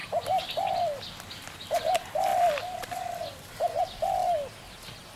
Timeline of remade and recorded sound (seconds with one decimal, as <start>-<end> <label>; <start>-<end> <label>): 0.0-2.3 recorded; 2.3-3.8 remade; 3.8-5.2 recorded